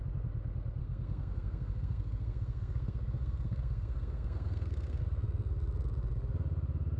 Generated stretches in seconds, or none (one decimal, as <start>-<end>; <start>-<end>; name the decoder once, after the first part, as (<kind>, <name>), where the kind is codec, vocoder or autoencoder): 0.8-5.0 (codec, SNAC)